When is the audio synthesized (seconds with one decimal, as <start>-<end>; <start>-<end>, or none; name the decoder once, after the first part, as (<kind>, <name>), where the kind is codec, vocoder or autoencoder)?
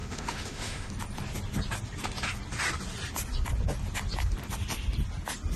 0.0-0.9 (autoencoder, DAC-VAE)